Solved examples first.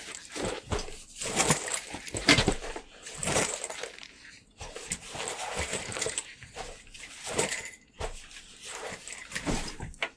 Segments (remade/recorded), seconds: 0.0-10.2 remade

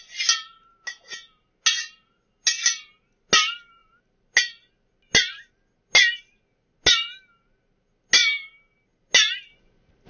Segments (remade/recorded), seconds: 0.0-10.1 recorded

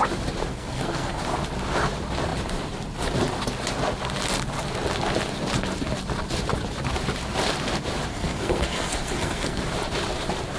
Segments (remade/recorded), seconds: 0.0-0.5 recorded; 0.5-1.2 remade; 1.2-8.1 recorded; 8.1-9.6 remade; 9.6-10.6 recorded

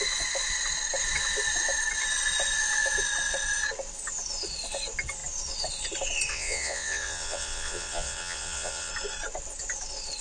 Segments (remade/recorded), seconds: 0.0-6.3 recorded; 6.3-8.9 remade; 8.9-10.2 recorded

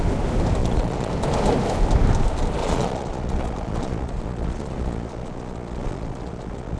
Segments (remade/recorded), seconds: 0.0-0.6 recorded; 0.6-1.1 remade; 1.1-2.6 recorded; 2.6-6.8 remade